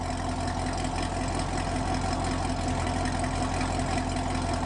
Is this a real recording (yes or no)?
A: yes